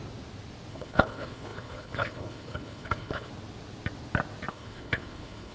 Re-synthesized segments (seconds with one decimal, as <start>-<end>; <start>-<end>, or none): 0.7-3.3; 4.5-5.5